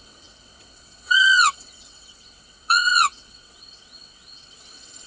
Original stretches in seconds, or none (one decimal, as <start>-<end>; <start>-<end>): none